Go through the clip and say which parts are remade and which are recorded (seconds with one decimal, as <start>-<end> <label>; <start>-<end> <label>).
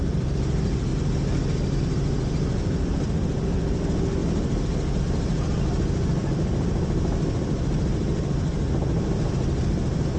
0.0-0.9 remade; 0.9-1.8 recorded; 1.8-4.2 remade; 4.2-5.0 recorded; 5.0-10.2 remade